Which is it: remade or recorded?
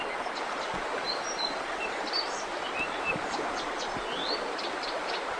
recorded